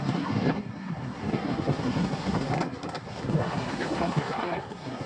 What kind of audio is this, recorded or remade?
remade